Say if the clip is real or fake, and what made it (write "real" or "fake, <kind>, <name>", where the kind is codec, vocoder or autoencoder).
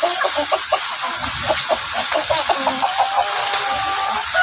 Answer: real